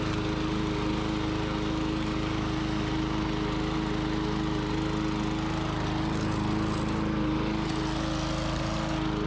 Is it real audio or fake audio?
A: real